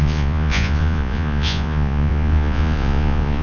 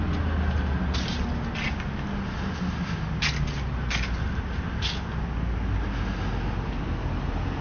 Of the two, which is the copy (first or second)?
first